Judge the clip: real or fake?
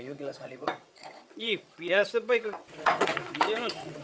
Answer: fake